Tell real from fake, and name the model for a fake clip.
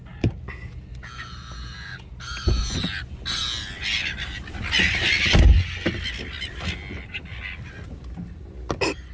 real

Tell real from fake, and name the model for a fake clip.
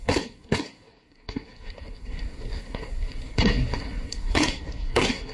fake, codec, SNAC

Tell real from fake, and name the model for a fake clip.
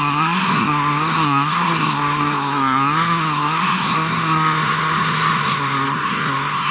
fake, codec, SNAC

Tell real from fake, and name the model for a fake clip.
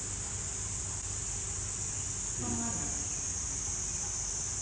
real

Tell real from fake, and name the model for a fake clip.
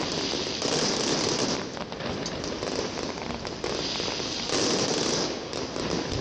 real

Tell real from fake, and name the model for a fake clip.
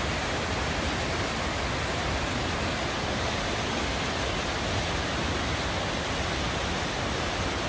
real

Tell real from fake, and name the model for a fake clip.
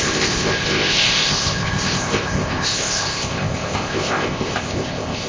fake, codec, ZipCodec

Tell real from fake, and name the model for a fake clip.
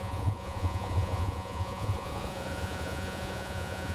fake, vocoder, Vocos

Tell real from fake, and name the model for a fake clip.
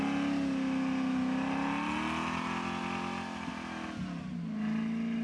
real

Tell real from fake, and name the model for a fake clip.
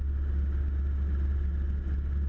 real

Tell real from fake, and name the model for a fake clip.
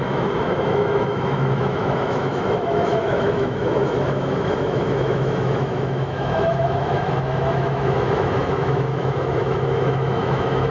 fake, autoencoder, DAC-VAE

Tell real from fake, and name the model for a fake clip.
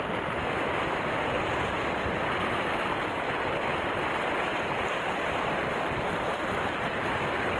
real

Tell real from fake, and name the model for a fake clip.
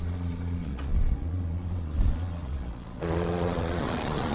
fake, vocoder, Vocos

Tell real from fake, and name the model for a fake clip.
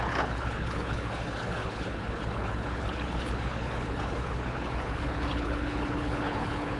fake, codec, HILCodec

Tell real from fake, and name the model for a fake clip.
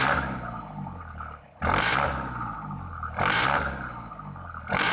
real